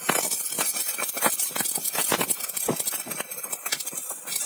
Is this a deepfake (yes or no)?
no